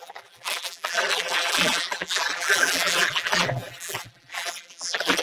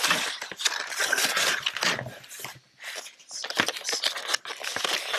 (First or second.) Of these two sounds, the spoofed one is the first